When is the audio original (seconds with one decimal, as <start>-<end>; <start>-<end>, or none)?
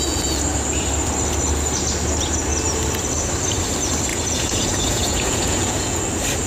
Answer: 0.0-4.1; 6.0-6.5